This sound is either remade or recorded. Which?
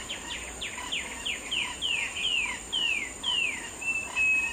recorded